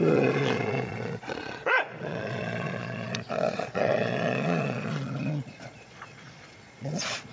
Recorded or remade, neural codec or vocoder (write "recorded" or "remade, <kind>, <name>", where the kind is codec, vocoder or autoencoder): remade, vocoder, Vocos